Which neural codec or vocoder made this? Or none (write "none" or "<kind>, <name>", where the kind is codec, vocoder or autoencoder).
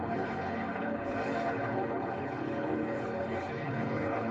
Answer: codec, HILCodec